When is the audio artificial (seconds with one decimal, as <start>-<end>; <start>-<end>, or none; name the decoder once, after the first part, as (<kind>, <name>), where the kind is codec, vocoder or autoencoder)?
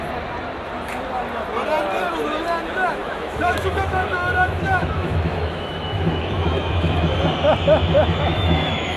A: 3.0-7.2 (autoencoder, DAC-VAE); 7.8-9.0